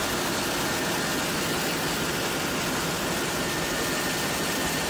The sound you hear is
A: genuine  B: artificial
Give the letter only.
A